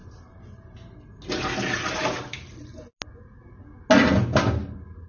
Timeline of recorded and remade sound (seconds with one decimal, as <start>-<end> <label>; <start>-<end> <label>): 0.0-5.1 recorded